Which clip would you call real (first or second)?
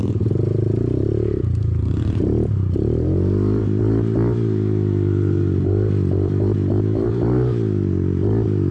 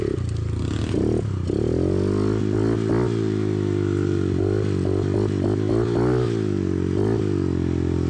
second